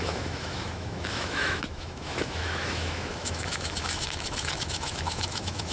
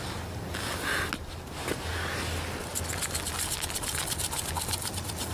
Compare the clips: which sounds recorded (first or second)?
second